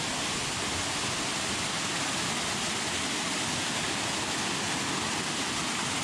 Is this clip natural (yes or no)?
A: yes